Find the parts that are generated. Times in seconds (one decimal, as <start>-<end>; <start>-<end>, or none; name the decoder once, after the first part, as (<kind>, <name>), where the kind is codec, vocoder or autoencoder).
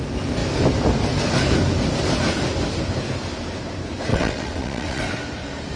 4.1-5.0 (vocoder, WaveNeXt)